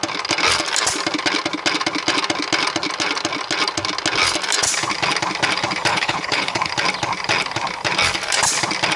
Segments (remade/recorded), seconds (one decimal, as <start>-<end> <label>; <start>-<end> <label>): 0.0-5.9 recorded; 5.9-6.7 remade; 6.7-9.0 recorded